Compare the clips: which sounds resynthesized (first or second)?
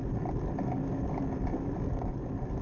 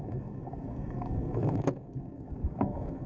second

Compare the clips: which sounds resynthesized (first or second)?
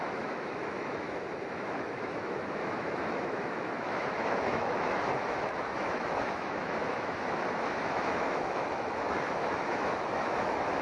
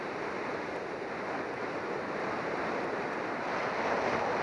first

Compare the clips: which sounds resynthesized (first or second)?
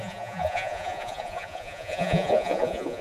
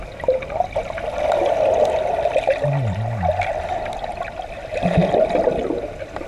first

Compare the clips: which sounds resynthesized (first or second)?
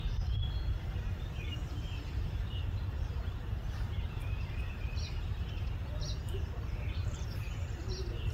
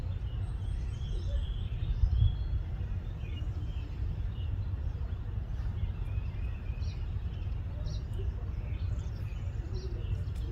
first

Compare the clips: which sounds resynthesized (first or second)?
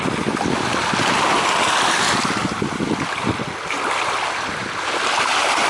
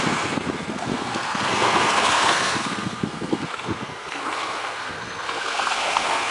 second